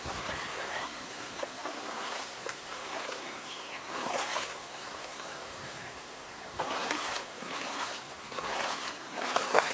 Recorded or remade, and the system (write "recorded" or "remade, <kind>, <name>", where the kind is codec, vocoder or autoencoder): remade, codec, SNAC